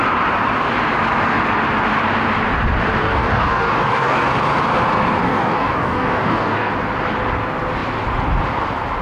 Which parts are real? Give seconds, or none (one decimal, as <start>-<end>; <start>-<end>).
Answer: 0.0-3.0; 4.3-5.2; 6.7-9.0